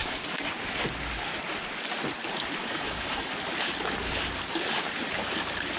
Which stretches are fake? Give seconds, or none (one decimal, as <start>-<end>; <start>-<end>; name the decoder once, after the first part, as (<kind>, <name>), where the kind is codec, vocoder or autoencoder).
2.6-3.3 (autoencoder, DAC-VAE)